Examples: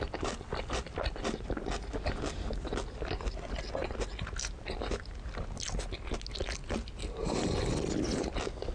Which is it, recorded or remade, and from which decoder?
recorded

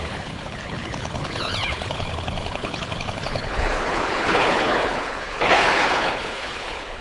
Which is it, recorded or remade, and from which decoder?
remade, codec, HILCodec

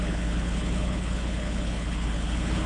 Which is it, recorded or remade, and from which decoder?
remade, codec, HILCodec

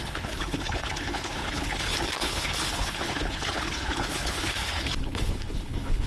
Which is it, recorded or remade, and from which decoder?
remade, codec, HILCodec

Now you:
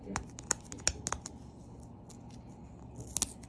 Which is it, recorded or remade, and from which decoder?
recorded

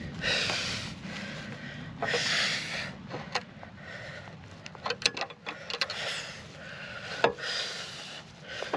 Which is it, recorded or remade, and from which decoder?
recorded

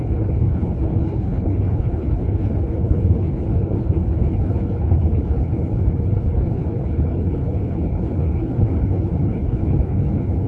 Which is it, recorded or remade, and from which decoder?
remade, codec, HILCodec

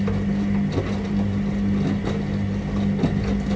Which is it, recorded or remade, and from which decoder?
recorded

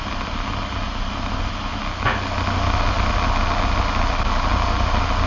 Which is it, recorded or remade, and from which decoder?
recorded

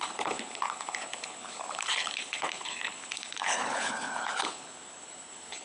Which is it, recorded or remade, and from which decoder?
remade, codec, HILCodec